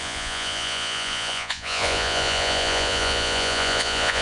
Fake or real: fake